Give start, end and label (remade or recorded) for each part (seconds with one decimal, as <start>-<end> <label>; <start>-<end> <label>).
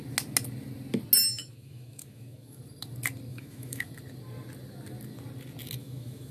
0.0-1.4 recorded; 1.4-2.6 remade; 2.6-3.3 recorded; 3.3-3.9 remade; 3.9-5.8 recorded; 5.8-6.3 remade